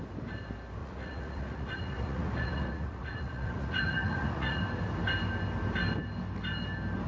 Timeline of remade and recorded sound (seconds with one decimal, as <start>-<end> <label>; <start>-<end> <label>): 0.0-0.8 recorded; 0.8-4.6 remade; 4.6-7.1 recorded